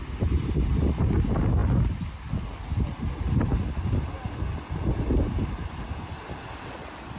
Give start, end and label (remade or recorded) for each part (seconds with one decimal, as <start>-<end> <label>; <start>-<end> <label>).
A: 0.0-7.2 recorded